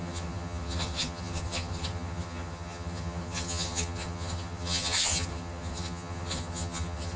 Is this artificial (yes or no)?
yes